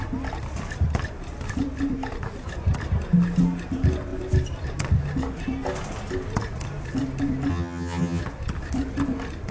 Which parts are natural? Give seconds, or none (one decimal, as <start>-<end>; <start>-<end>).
0.0-7.5; 8.2-9.5